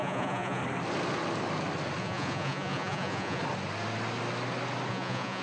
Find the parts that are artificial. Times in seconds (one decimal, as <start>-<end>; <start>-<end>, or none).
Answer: 0.0-0.6; 2.0-3.4; 4.9-5.4